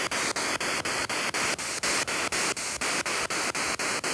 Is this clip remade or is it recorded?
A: recorded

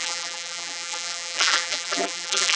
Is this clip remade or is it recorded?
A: remade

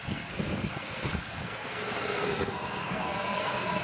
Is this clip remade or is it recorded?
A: remade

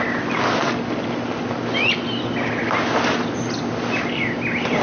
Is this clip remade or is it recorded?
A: recorded